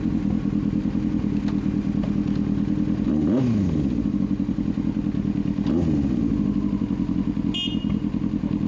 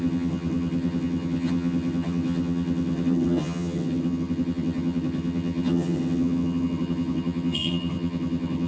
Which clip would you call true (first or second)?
first